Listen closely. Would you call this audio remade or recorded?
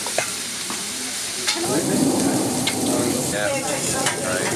remade